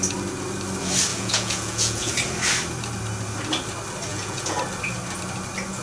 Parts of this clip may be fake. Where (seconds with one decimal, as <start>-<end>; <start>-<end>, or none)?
1.1-2.1; 4.1-4.6